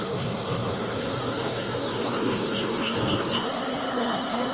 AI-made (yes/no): yes